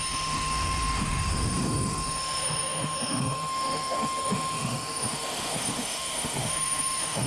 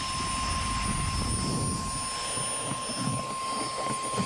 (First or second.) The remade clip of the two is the first